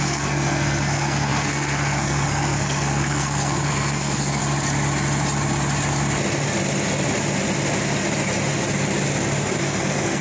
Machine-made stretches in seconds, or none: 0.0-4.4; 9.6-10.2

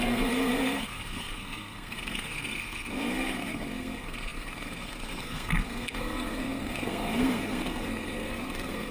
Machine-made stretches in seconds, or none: 0.0-8.9

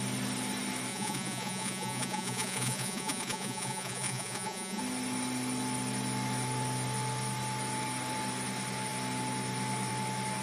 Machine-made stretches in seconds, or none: 0.9-4.8

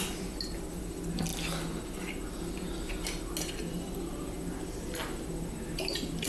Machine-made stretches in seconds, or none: none

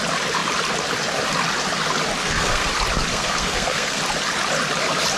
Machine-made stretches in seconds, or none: 2.2-2.7; 3.1-4.0

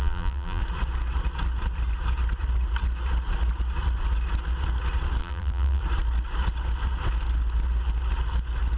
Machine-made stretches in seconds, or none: 0.0-0.6; 5.2-5.8

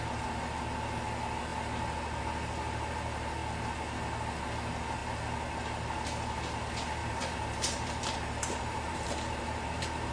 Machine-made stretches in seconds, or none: 7.0-10.1